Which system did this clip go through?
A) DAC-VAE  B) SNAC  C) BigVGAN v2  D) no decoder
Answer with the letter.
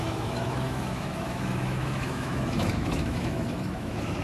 A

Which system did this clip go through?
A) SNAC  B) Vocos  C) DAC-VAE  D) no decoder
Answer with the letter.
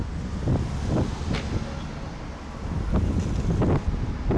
D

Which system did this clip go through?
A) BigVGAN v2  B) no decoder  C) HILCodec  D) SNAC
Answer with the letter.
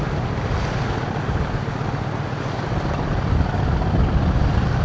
B